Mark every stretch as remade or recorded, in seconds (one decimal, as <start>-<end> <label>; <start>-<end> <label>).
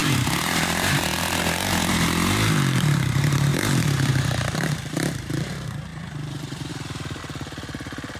0.0-7.2 remade; 7.2-8.2 recorded